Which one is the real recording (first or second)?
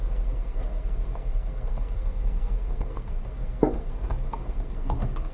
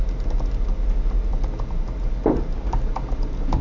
second